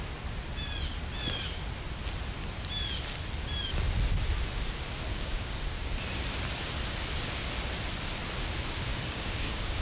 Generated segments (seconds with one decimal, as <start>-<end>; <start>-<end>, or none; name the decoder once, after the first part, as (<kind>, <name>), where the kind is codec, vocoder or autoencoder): 5.1-5.9 (codec, DAC); 8.9-9.8